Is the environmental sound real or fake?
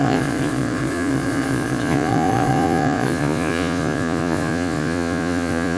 fake